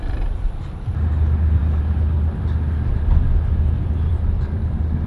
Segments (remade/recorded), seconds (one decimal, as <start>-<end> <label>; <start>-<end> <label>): 0.0-5.1 recorded

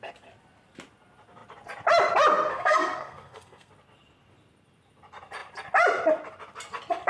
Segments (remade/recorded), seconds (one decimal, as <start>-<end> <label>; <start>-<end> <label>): 0.0-2.5 recorded; 2.5-3.7 remade; 3.7-7.1 recorded

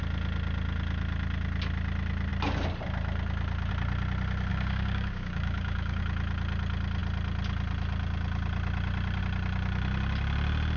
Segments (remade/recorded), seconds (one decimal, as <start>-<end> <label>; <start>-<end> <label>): 0.0-4.5 recorded; 4.5-6.0 remade; 6.0-10.8 recorded